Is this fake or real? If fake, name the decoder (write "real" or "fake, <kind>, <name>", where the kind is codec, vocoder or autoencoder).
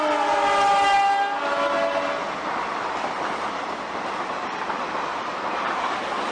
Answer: real